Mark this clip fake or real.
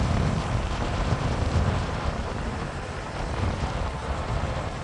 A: real